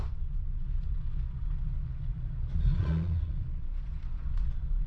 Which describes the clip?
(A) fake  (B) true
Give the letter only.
A